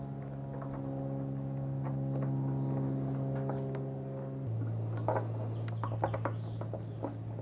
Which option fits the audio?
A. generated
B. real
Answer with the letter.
B